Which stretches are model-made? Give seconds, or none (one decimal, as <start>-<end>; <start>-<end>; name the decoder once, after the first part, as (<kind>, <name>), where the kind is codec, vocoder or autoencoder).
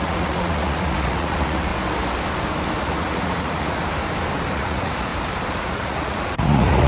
0.0-1.7 (vocoder, Vocos); 2.8-3.8; 4.5-5.1; 5.6-6.9